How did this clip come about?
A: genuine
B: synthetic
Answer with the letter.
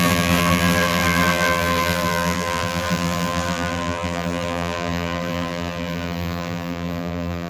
B